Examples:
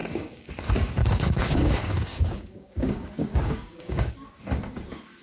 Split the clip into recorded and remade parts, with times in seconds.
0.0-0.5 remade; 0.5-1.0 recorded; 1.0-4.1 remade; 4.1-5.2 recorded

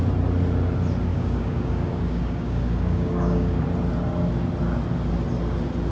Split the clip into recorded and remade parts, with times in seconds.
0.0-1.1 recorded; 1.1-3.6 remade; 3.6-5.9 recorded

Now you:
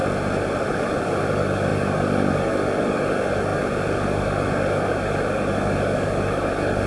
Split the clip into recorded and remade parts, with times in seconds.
0.0-0.7 recorded; 0.7-6.9 remade